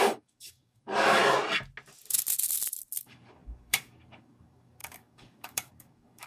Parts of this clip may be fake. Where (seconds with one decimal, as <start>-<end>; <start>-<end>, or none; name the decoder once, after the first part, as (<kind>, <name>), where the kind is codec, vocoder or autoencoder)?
0.0-1.2 (codec, DAC); 3.0-6.3